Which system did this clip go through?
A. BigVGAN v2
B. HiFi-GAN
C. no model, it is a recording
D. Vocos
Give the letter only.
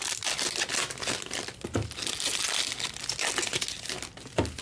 C